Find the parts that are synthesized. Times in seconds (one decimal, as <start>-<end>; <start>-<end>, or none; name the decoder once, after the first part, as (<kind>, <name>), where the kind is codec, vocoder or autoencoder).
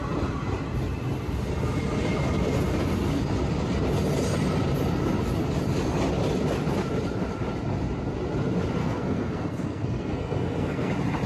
8.8-10.9 (codec, SNAC)